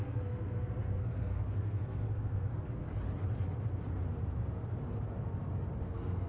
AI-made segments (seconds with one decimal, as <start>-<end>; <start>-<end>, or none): 0.0-2.9; 5.8-6.3